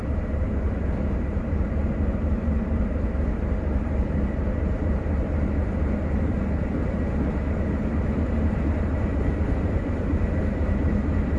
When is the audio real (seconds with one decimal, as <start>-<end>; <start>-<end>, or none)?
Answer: none